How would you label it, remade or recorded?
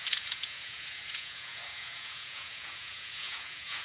remade